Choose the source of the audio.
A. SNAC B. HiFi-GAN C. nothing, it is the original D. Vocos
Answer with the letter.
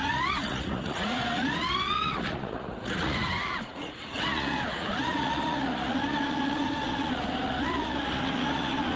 D